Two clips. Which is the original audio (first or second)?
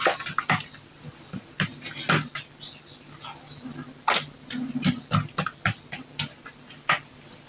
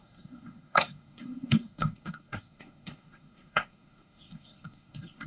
first